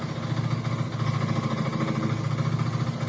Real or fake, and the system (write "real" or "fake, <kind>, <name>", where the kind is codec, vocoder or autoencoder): real